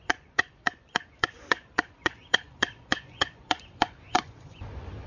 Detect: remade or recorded remade